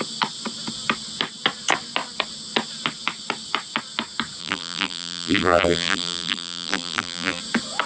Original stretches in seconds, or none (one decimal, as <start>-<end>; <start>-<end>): 0.0-4.4; 7.4-7.9